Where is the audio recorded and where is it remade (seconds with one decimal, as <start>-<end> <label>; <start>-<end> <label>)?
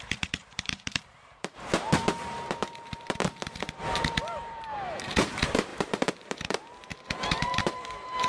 0.0-8.3 remade